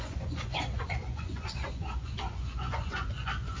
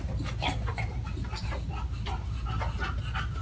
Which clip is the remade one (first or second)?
first